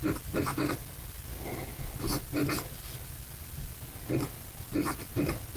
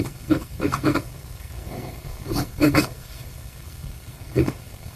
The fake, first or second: second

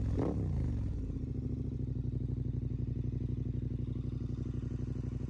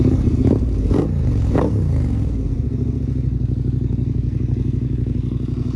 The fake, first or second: second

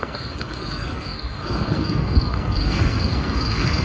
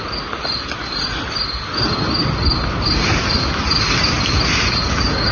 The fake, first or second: first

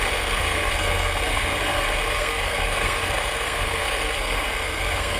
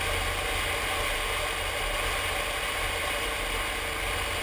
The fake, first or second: first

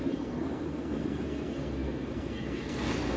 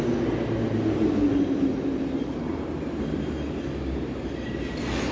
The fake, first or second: first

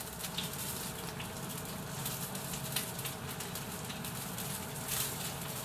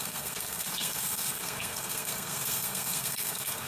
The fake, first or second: second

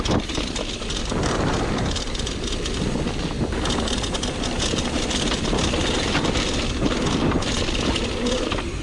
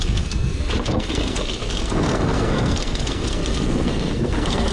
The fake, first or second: second